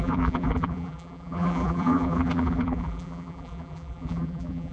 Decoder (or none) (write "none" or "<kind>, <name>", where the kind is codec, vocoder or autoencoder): vocoder, BigVGAN v2